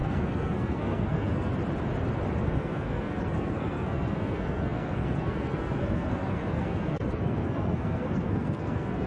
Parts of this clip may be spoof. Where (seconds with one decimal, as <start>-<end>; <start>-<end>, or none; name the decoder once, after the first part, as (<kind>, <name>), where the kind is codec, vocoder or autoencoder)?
0.0-1.5 (codec, SNAC); 2.4-9.1

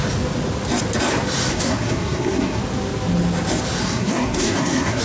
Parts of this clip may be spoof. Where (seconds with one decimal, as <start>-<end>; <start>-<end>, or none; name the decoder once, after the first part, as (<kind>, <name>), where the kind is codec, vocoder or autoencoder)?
1.5-2.6 (codec, SNAC); 3.8-5.0

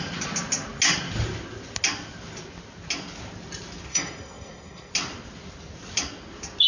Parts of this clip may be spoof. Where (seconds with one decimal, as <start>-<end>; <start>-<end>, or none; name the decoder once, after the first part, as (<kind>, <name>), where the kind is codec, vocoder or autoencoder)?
3.9-4.9 (codec, SNAC)